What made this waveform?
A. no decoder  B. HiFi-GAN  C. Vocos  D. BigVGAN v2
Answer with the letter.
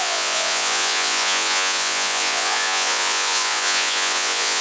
C